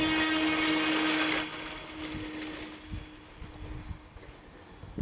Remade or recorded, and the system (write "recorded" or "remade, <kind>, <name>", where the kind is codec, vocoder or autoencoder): recorded